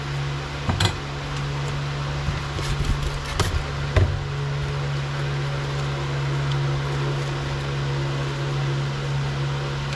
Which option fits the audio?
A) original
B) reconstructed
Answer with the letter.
A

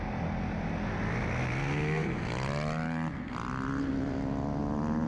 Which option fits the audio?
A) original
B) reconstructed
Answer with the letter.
A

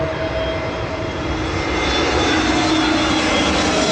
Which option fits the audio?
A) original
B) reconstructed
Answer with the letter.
A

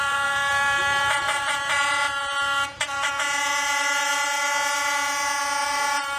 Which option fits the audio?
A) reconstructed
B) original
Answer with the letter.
A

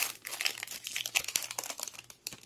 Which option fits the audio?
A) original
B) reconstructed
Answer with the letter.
A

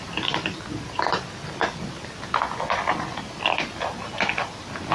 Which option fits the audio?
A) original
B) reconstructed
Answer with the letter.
A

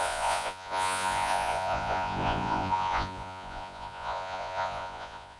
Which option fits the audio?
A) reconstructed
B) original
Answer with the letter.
A